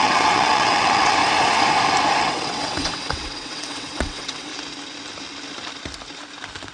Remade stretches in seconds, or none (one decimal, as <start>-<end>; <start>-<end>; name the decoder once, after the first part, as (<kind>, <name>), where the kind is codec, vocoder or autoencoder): 0.0-1.2 (vocoder, WaveNeXt); 2.2-4.5